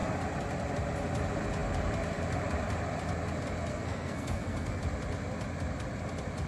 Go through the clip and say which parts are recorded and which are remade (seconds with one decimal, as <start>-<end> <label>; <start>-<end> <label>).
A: 0.0-3.7 recorded; 3.7-4.8 remade; 4.8-6.5 recorded